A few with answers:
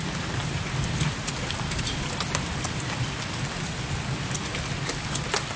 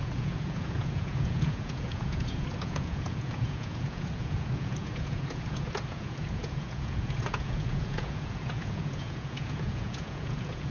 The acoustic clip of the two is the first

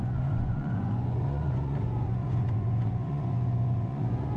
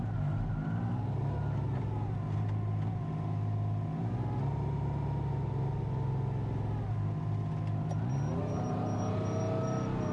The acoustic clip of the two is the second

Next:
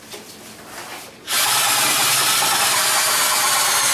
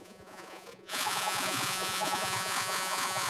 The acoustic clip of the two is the first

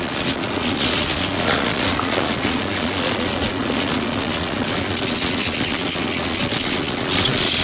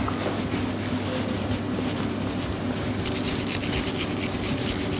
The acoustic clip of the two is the second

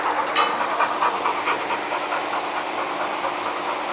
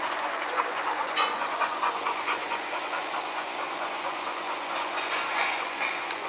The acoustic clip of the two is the first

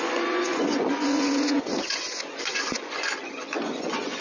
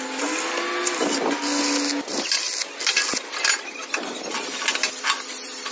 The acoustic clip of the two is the second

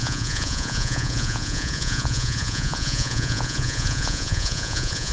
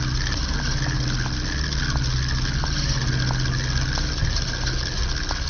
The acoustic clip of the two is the second